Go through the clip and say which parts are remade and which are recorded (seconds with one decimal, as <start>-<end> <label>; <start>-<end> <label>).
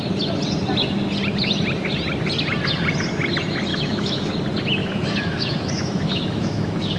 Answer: 0.0-3.7 recorded; 3.7-4.3 remade; 4.3-4.8 recorded; 4.8-7.0 remade